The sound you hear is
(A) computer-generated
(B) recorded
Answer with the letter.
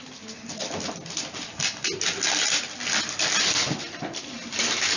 B